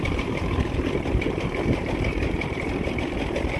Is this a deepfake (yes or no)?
yes